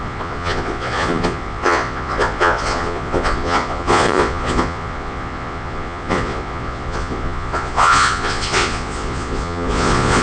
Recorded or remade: remade